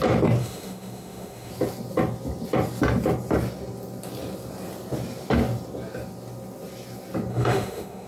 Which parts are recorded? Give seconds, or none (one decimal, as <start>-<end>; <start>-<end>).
0.0-0.4; 1.5-7.3